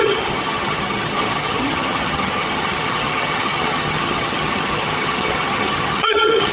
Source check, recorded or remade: remade